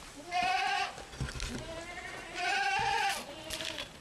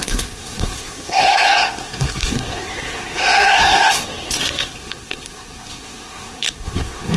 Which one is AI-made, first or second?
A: second